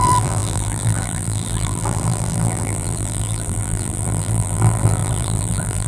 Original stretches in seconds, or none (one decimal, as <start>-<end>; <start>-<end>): none